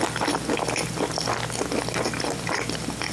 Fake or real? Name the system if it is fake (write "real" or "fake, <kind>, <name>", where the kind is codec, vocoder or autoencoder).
real